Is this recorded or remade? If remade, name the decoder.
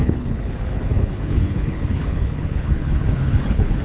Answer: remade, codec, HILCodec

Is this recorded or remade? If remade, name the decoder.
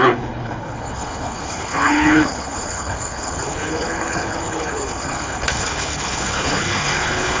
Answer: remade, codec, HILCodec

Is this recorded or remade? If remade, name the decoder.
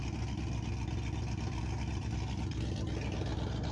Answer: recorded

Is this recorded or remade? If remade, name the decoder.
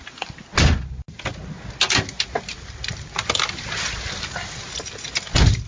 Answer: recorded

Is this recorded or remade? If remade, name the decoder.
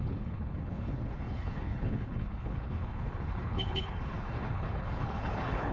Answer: remade, codec, HILCodec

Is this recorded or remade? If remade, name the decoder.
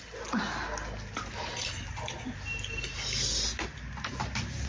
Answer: recorded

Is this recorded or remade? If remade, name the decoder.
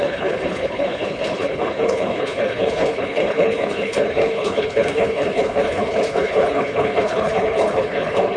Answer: remade, codec, HILCodec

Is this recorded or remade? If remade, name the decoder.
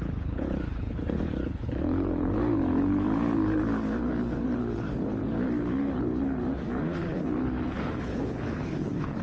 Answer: remade, codec, HILCodec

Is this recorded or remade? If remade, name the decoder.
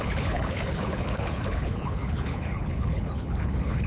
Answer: remade, codec, HILCodec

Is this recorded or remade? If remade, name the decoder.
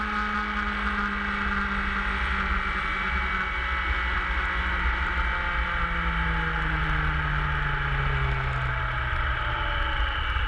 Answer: recorded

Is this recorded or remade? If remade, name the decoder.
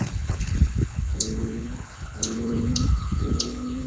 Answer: remade, codec, HILCodec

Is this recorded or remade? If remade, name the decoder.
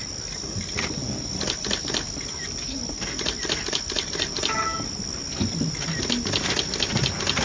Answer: recorded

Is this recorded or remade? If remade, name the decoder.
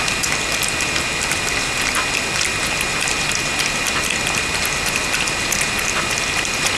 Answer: recorded